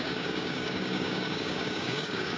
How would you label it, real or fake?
fake